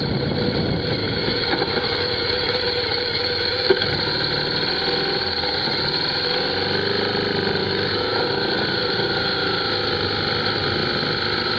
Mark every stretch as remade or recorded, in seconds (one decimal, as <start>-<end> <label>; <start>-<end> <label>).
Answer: 0.0-1.0 recorded; 1.0-3.9 remade; 3.9-7.6 recorded; 7.6-8.2 remade; 8.2-11.6 recorded